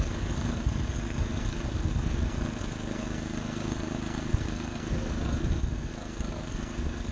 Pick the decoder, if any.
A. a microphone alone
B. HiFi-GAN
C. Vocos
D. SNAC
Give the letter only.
D